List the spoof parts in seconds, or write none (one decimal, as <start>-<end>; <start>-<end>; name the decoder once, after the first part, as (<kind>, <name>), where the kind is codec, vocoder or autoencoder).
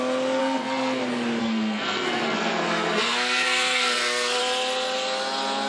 0.4-1.0 (codec, SNAC); 1.4-4.4